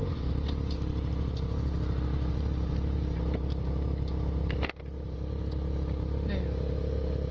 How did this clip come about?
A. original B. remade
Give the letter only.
A